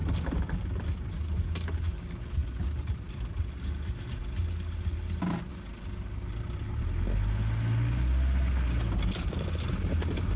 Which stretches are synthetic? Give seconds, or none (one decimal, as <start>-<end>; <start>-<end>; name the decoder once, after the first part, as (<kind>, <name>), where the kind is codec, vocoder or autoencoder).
2.4-3.7 (vocoder, BigVGAN v2)